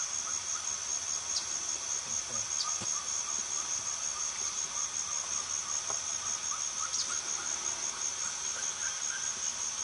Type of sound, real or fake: real